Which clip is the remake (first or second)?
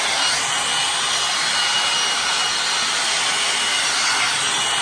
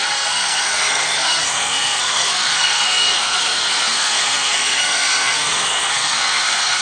second